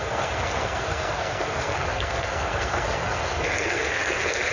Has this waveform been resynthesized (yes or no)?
yes